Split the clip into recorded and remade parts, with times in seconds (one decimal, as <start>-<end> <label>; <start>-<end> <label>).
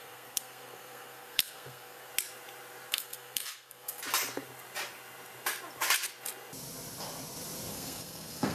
0.0-2.1 remade; 2.1-2.9 recorded; 2.9-4.0 remade; 4.0-7.7 recorded; 7.7-8.5 remade